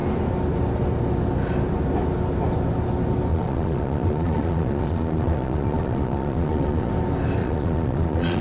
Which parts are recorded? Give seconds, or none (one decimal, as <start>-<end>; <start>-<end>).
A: 0.0-3.3; 6.9-7.4